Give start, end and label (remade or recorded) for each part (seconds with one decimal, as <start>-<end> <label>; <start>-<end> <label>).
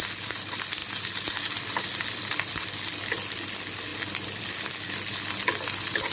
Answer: 0.0-6.1 recorded